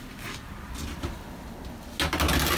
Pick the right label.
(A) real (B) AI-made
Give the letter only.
A